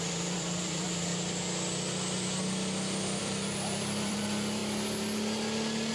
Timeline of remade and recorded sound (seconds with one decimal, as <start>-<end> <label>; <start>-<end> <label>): 0.0-1.1 remade; 1.1-3.2 recorded; 3.2-4.6 remade; 4.6-5.9 recorded

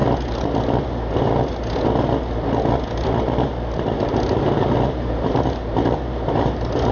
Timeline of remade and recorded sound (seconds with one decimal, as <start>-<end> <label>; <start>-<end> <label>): 0.0-3.8 recorded; 3.8-6.9 remade

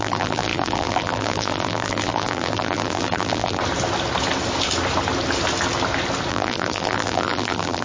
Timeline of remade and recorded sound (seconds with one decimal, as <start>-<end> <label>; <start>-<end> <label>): 0.0-3.6 remade; 3.6-6.3 recorded; 6.3-7.8 remade